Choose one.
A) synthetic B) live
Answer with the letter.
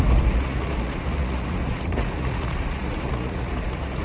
A